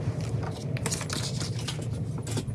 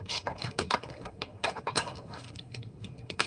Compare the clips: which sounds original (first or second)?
first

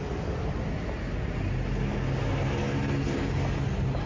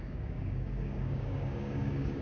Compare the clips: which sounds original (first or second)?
first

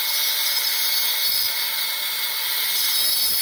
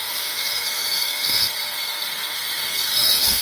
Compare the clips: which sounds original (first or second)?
first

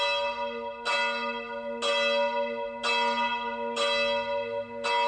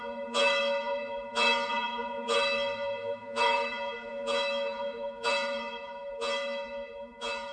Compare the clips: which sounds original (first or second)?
first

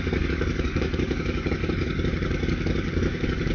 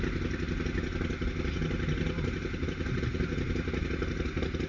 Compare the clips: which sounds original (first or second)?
second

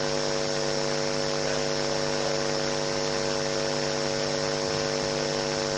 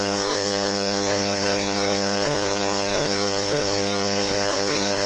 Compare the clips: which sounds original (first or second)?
first